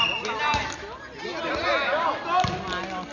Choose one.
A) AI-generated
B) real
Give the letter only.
B